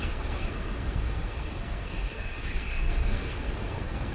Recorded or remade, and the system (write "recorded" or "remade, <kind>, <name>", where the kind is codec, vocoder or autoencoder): remade, codec, SNAC